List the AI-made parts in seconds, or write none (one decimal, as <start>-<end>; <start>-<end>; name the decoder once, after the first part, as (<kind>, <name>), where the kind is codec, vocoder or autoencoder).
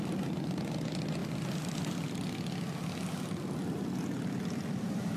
none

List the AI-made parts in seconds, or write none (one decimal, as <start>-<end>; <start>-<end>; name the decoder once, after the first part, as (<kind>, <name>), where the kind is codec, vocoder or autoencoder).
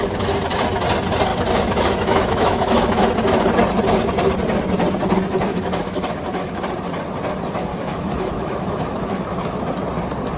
1.3-3.0 (autoencoder, DAC-VAE); 5.5-6.6; 7.7-9.6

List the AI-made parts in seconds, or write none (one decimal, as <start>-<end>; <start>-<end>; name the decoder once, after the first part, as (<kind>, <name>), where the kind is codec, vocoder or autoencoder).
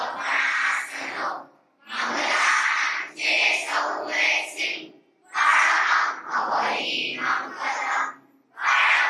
none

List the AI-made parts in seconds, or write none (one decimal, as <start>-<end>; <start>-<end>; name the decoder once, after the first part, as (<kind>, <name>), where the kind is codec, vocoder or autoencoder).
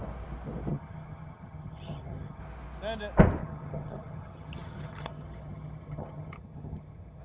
0.7-2.4 (vocoder, HiFi-GAN); 3.4-7.2